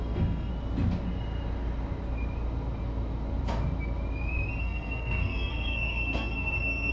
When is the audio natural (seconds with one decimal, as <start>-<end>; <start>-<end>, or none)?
0.5-4.6